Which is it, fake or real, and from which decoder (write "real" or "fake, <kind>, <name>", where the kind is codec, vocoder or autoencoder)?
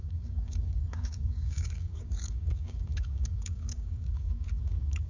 fake, codec, DAC